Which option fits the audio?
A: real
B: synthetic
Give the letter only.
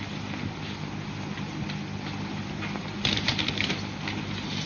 A